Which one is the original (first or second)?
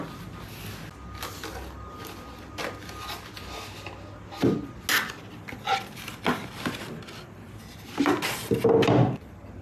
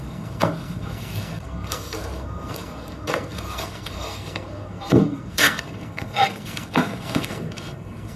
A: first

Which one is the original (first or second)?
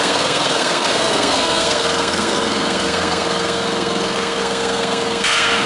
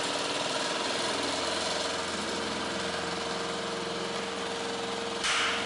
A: second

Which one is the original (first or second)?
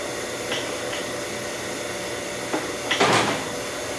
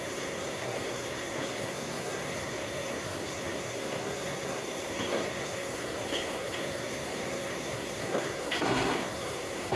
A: first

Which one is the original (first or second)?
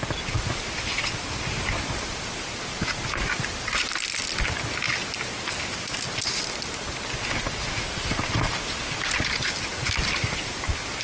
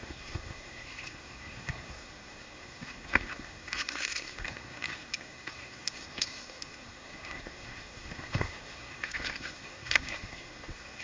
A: first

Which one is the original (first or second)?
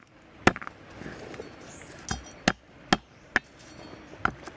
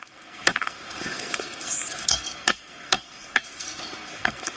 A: first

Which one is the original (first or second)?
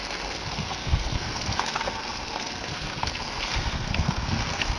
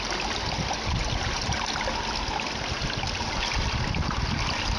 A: second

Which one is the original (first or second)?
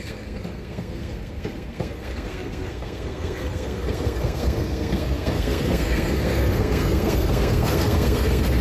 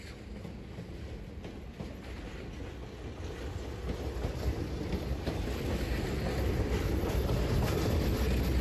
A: second